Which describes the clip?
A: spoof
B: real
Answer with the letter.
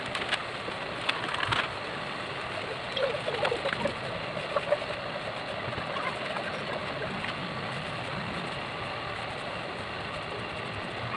B